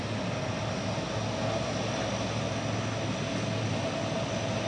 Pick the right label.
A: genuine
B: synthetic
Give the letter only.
A